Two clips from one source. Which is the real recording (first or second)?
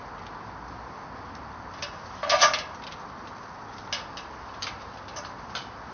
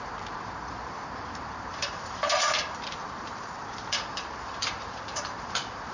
first